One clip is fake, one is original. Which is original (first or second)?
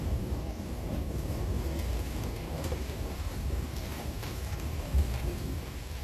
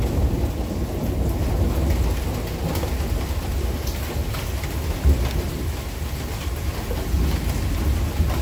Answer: second